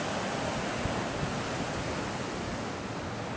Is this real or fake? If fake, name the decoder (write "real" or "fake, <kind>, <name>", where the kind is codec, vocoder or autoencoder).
real